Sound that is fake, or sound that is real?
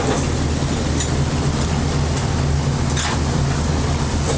real